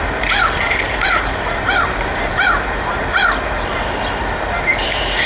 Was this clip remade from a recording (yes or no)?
yes